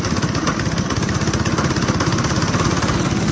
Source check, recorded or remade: recorded